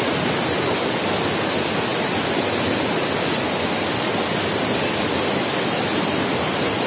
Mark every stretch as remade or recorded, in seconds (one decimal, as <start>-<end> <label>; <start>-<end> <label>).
0.0-6.9 recorded